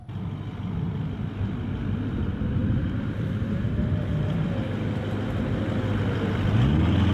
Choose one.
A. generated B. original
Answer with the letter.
B